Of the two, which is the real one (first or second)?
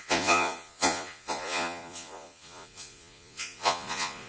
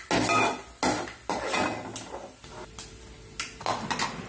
second